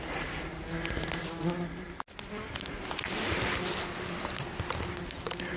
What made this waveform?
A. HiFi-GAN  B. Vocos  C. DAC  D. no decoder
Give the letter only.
D